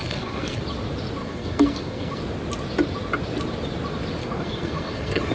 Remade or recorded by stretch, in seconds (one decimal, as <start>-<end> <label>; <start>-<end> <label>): 0.0-0.6 remade; 0.6-1.2 recorded; 1.2-2.2 remade; 2.2-4.2 recorded; 4.2-5.3 remade